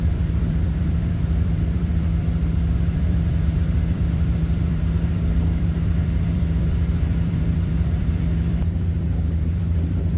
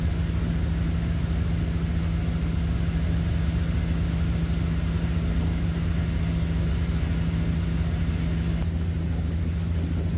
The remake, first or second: first